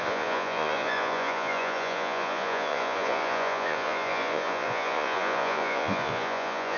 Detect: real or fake fake